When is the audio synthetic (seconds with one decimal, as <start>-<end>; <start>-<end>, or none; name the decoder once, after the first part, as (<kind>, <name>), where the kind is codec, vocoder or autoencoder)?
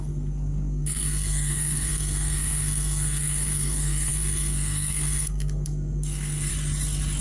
0.0-6.5 (codec, SNAC)